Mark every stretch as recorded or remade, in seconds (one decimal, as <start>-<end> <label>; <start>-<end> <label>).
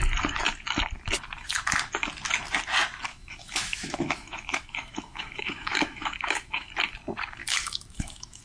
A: 0.0-3.1 recorded; 3.1-6.7 remade; 6.7-7.4 recorded; 7.4-8.4 remade